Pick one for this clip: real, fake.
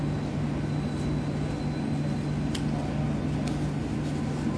real